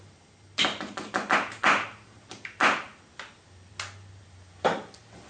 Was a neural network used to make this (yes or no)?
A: no